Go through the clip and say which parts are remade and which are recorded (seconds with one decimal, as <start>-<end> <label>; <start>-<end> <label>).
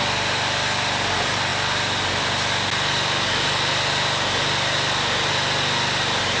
0.0-6.4 recorded